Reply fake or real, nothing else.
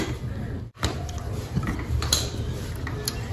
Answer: fake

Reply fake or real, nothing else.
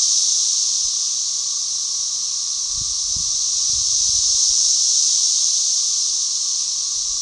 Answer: fake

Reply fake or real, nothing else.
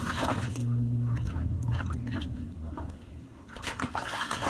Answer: fake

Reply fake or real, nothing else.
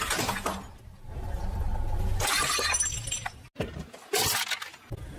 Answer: real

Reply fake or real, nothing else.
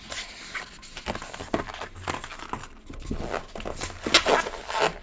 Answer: real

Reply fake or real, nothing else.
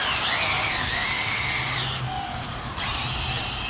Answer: real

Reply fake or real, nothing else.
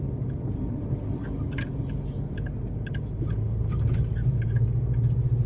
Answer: real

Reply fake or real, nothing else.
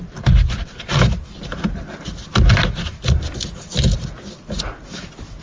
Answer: real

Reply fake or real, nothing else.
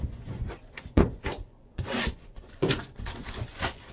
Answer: fake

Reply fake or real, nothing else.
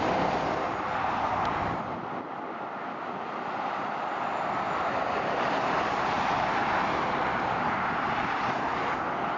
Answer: real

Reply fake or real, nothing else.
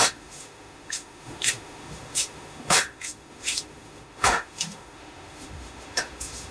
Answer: fake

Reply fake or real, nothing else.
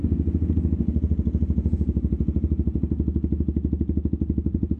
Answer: real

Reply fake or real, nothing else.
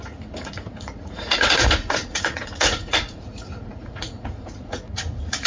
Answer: fake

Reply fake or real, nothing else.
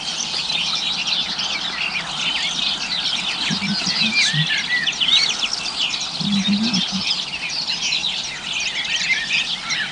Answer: real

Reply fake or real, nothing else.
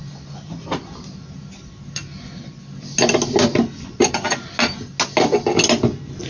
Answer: real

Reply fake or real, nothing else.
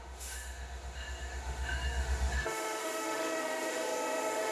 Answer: fake